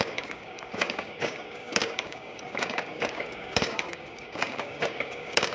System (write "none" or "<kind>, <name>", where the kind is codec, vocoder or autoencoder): codec, DAC